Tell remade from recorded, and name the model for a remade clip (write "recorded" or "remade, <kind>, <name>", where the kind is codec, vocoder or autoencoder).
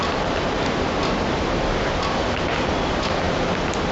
recorded